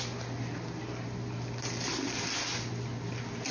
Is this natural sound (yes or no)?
yes